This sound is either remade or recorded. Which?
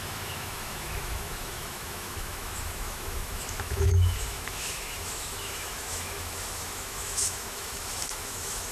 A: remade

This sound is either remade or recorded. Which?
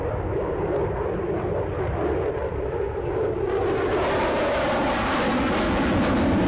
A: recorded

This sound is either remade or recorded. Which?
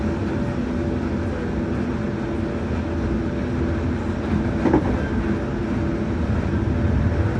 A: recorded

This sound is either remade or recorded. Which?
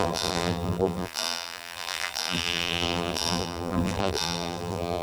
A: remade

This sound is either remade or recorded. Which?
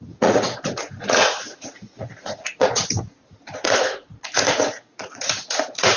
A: remade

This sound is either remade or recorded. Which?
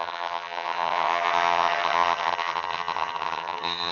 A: remade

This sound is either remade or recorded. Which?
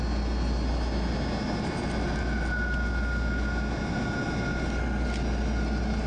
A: recorded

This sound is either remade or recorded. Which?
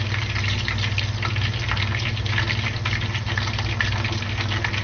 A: recorded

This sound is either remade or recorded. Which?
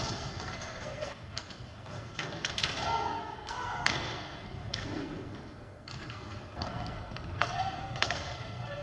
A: remade